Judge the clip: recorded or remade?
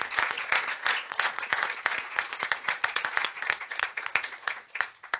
remade